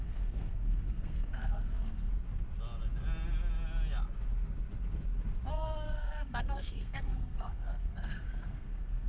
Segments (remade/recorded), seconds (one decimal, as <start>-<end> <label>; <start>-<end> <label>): 0.0-2.1 remade; 2.1-5.5 recorded; 5.5-9.1 remade